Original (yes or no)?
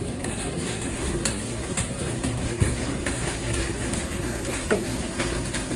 no